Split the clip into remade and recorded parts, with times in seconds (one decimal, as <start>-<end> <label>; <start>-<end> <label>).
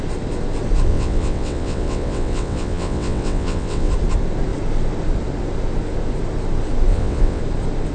0.0-0.9 recorded; 0.9-3.9 remade; 3.9-6.9 recorded; 6.9-7.4 remade; 7.4-7.9 recorded